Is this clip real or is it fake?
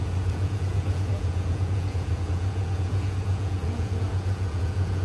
fake